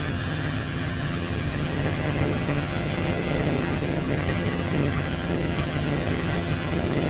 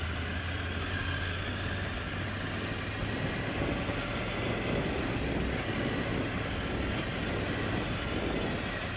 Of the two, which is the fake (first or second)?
first